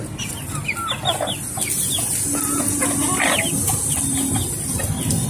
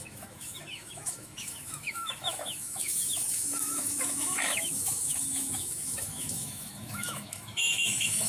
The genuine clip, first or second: first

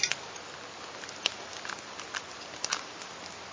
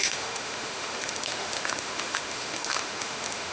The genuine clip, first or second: first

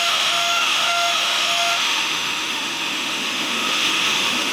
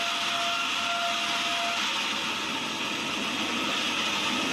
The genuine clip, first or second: second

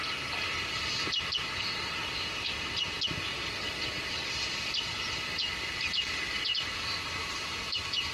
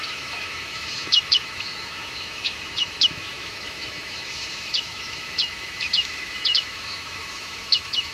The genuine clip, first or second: first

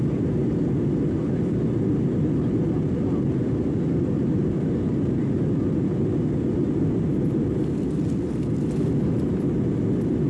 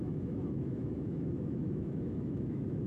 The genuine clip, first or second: first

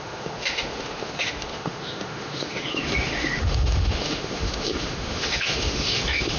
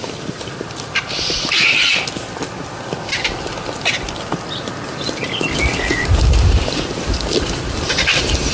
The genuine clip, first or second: second